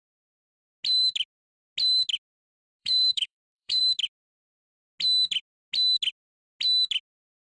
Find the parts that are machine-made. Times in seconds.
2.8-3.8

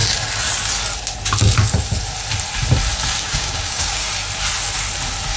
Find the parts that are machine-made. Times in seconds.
3.2-4.0

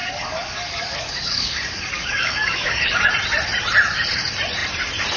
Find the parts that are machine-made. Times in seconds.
0.0-3.1